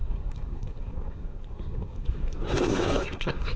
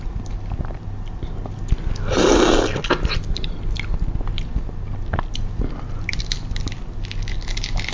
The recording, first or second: second